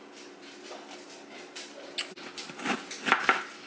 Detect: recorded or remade recorded